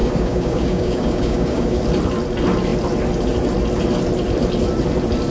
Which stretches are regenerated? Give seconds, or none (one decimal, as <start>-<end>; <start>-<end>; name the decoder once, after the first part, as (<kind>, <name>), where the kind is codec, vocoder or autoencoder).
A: 0.0-1.8 (codec, DAC)